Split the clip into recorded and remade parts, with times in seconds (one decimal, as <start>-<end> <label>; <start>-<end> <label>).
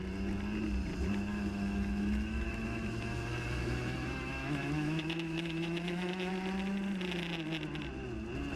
0.0-1.3 recorded; 1.3-6.3 remade; 6.3-8.6 recorded